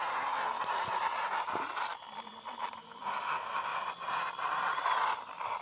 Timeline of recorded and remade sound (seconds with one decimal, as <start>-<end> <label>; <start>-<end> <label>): 0.0-3.7 recorded; 3.7-4.3 remade; 4.3-5.6 recorded